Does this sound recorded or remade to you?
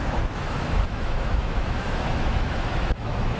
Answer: remade